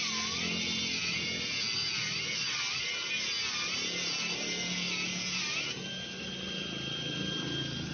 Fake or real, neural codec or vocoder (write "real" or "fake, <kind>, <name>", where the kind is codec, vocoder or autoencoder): real